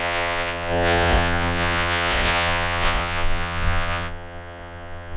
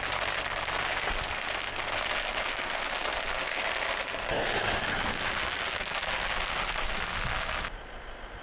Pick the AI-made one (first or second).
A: first